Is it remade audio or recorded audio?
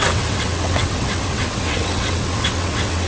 remade